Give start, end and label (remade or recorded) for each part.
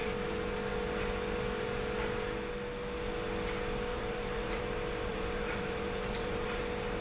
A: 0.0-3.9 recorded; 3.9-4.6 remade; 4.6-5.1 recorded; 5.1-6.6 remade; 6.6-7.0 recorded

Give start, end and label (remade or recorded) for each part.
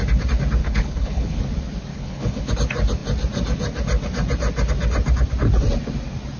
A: 0.0-0.6 recorded; 0.6-1.4 remade; 1.4-1.9 recorded; 1.9-2.5 remade; 2.5-6.4 recorded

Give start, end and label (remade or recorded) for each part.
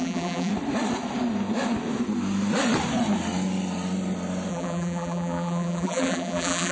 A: 0.0-0.5 remade; 0.5-4.5 recorded; 4.5-6.7 remade